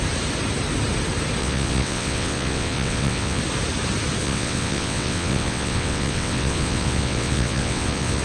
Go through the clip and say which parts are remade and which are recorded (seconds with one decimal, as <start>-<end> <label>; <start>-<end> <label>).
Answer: 0.0-1.4 recorded; 1.4-3.4 remade; 3.4-4.2 recorded; 4.2-8.2 remade